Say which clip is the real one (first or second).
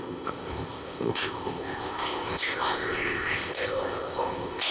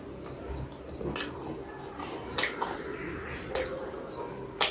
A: second